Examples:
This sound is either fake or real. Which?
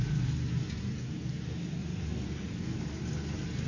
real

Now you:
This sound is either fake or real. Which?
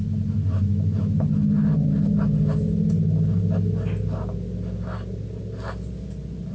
real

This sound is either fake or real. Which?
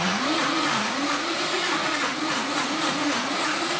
fake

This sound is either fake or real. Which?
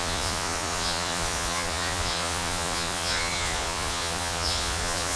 fake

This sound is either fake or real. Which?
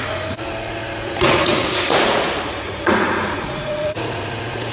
fake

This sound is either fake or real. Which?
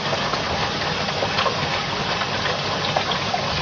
real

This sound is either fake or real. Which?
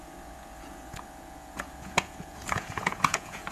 fake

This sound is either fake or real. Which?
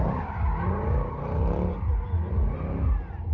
real